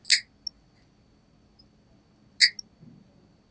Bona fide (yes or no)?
yes